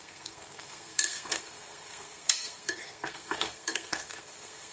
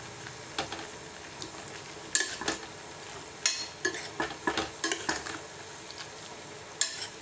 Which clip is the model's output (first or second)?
first